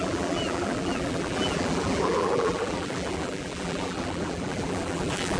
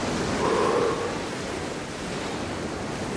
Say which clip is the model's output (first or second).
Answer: first